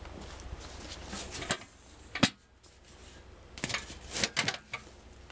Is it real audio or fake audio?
real